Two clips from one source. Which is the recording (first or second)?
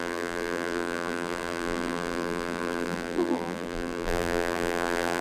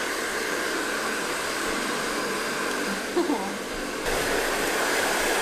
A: second